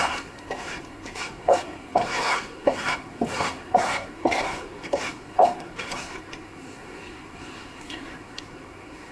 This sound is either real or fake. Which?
fake